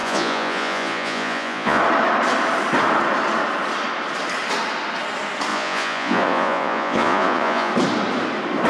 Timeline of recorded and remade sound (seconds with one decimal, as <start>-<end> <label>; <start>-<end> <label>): 0.0-1.8 remade; 1.8-5.5 recorded; 5.5-7.7 remade; 7.7-8.7 recorded